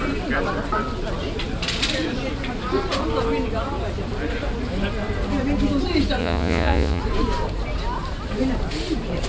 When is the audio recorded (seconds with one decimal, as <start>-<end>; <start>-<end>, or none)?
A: 0.0-6.2; 7.0-9.3